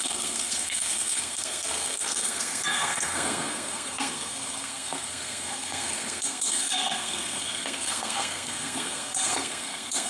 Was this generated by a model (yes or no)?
yes